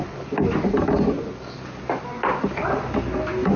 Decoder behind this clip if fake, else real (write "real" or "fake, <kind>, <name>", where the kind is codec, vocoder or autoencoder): real